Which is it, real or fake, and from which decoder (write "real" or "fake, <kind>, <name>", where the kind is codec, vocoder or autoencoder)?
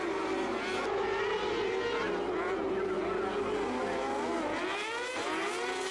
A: real